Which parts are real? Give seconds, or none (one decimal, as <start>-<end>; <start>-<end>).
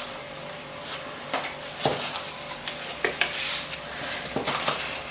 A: 1.9-5.1